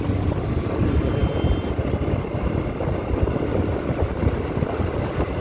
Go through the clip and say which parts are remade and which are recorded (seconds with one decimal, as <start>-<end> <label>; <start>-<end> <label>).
0.0-5.4 recorded